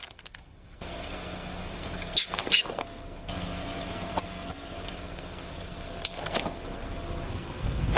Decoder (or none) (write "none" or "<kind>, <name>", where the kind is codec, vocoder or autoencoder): codec, SNAC